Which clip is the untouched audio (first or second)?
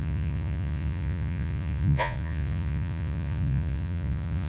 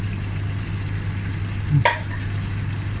second